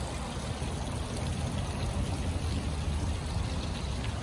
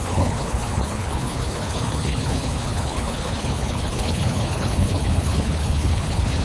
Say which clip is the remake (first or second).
second